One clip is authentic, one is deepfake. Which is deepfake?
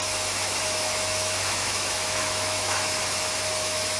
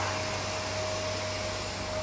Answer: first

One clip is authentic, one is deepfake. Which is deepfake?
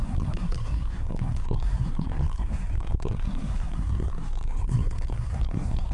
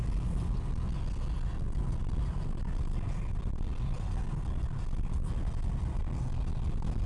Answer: first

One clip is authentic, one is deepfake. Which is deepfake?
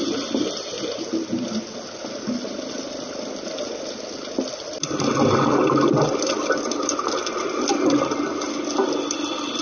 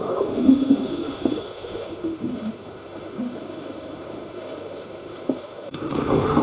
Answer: second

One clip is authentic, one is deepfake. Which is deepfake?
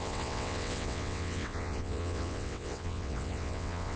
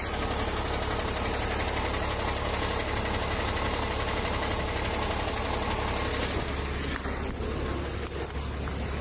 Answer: first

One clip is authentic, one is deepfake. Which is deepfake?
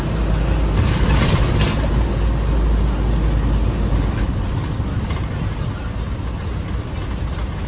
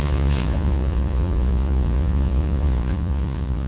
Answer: second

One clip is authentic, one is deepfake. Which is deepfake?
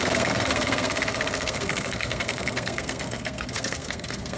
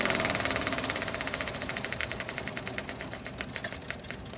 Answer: first